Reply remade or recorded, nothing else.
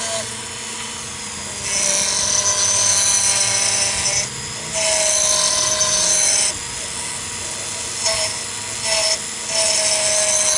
recorded